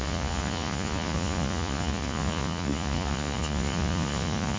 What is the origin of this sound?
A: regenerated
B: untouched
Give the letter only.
A